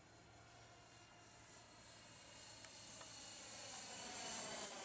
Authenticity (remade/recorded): recorded